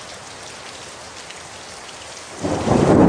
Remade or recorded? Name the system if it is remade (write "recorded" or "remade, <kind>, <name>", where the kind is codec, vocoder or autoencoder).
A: recorded